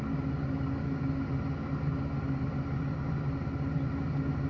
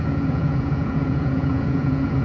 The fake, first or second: second